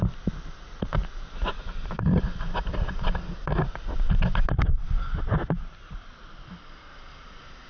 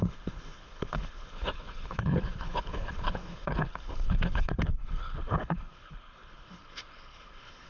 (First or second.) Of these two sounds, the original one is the first